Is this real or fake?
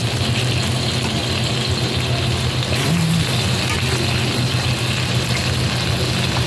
real